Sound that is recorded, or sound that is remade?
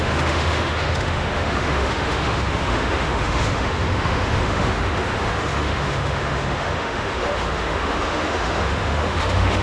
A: remade